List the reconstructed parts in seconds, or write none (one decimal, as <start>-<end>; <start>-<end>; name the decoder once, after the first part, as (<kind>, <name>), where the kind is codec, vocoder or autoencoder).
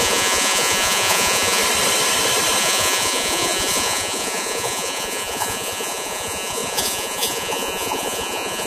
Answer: 0.0-1.6 (vocoder, Vocos); 2.6-8.7